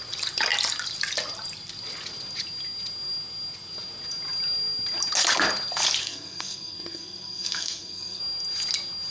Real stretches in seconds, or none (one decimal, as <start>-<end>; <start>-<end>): 0.0-6.0; 8.2-9.1